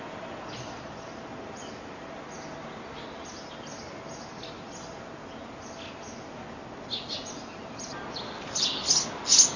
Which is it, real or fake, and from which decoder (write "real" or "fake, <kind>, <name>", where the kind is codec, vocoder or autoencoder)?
real